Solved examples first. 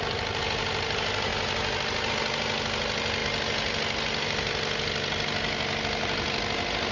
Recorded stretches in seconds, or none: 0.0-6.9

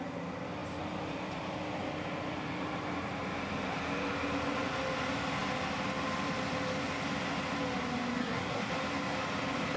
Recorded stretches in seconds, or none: 0.0-8.2; 8.7-9.8

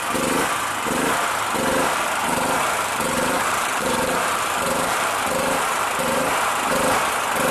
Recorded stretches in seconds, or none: 0.0-2.2; 6.3-7.5